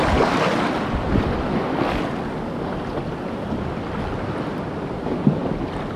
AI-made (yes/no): no